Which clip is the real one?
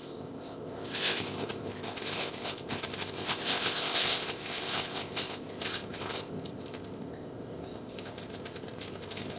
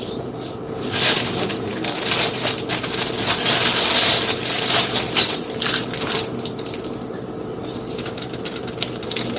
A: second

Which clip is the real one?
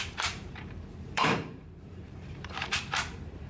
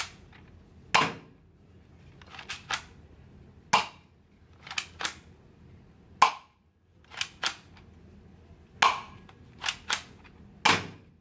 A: second